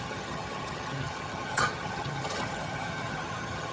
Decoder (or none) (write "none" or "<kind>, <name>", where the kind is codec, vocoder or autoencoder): vocoder, HiFi-GAN